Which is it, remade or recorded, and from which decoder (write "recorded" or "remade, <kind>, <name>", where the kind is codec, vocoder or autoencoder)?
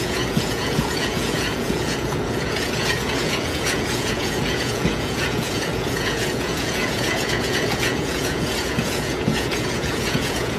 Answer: remade, vocoder, Vocos